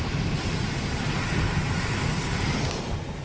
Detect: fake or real real